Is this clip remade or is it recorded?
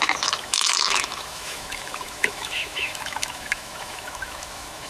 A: remade